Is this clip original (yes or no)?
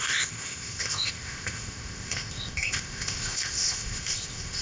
no